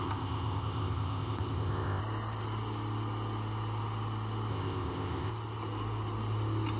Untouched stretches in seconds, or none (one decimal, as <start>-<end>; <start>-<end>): 2.0-4.5; 5.3-6.8